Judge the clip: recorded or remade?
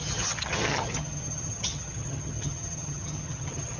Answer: remade